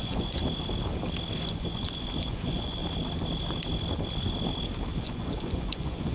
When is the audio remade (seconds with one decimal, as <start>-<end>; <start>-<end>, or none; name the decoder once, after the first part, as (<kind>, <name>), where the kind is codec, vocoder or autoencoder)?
0.0-0.4 (vocoder, Vocos); 1.5-2.8; 5.0-6.1